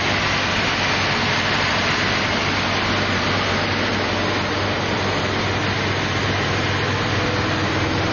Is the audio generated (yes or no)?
no